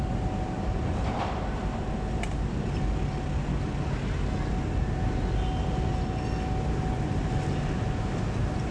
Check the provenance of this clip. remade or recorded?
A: recorded